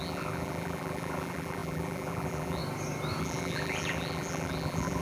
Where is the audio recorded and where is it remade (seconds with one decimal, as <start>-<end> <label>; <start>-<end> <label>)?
0.0-2.6 remade; 2.6-3.2 recorded; 3.2-5.0 remade